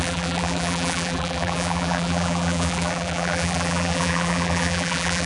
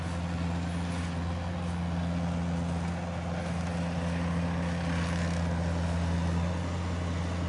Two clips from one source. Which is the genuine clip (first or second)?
second